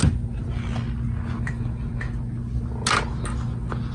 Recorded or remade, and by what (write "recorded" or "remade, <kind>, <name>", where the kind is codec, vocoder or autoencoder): recorded